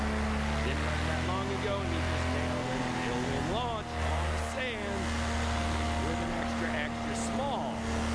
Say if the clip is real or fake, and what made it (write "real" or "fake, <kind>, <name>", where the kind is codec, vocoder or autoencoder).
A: real